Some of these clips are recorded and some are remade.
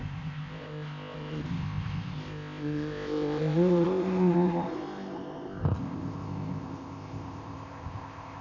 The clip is remade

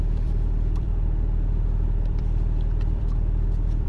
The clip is remade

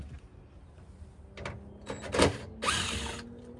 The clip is recorded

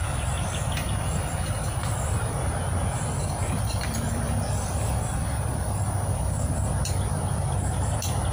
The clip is remade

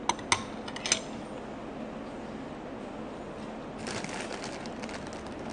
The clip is recorded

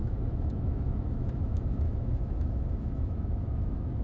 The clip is remade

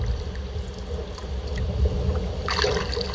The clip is recorded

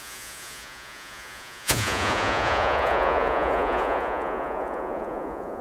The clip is remade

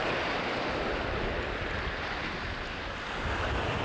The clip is recorded